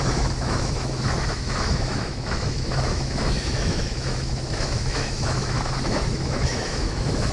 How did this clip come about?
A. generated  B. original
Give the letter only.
A